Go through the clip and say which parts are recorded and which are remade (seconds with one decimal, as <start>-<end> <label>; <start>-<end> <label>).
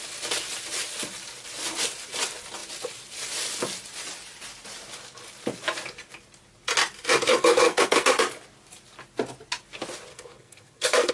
0.0-7.3 recorded; 7.3-8.1 remade; 8.1-10.1 recorded; 10.1-11.1 remade